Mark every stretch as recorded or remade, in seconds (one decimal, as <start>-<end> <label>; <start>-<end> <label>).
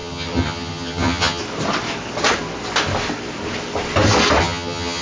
0.0-1.4 remade; 1.4-4.4 recorded; 4.4-5.0 remade